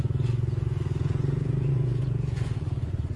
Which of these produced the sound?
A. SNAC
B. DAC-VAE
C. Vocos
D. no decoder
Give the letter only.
C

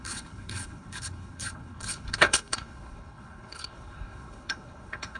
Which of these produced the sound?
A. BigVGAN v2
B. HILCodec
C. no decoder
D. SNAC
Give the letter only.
B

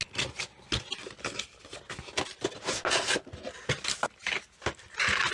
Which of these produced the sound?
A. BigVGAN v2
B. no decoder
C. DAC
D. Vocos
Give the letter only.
B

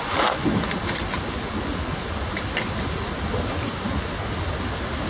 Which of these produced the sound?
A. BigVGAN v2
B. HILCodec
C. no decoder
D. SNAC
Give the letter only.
C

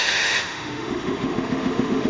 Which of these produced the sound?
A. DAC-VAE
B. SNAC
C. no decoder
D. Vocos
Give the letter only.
A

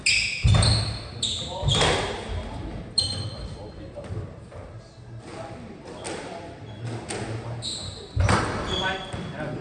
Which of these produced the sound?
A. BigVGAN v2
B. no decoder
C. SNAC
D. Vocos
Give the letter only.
B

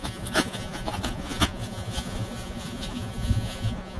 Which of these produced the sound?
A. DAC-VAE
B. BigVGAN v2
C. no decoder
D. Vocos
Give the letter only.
D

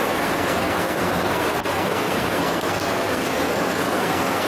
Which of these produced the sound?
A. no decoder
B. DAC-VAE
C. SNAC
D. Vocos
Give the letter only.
C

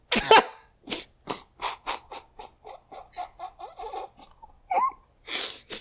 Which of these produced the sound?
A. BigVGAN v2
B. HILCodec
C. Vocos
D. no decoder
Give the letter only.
D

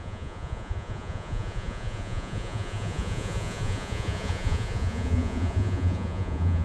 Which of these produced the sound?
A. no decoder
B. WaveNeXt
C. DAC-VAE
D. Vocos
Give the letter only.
D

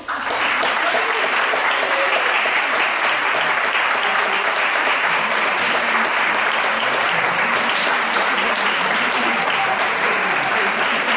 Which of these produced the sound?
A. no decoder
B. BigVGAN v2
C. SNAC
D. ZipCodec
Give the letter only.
B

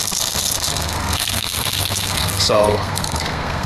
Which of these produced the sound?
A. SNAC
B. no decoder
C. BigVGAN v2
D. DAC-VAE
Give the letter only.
A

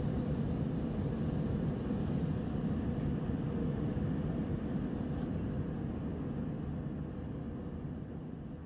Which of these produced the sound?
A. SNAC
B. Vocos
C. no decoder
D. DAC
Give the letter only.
C